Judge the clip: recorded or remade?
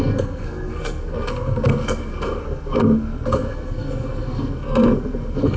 remade